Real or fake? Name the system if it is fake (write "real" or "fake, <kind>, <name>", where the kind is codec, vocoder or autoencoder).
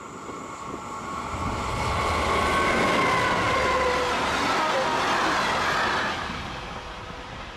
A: real